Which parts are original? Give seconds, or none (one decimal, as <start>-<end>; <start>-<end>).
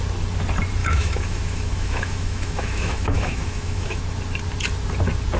0.0-0.8; 4.0-5.4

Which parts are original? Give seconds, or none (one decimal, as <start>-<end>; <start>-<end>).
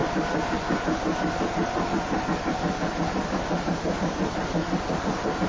0.0-5.5